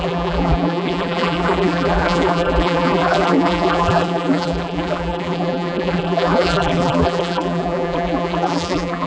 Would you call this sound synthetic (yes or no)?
yes